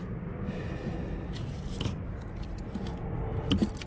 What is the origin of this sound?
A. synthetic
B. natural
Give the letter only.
B